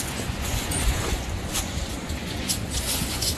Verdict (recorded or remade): remade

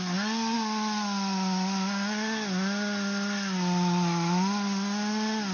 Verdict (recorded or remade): recorded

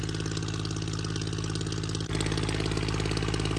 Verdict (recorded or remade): recorded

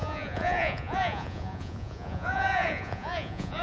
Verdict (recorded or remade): remade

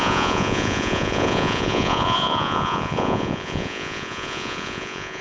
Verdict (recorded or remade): remade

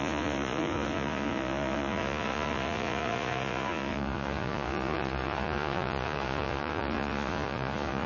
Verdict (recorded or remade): remade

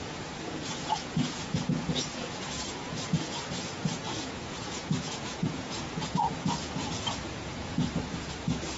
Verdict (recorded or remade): remade